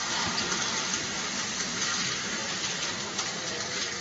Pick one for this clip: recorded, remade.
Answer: recorded